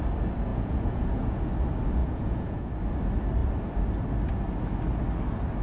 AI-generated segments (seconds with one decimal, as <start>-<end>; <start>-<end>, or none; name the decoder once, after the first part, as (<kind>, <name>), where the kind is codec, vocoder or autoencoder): 0.5-1.4 (vocoder, Vocos); 2.0-2.7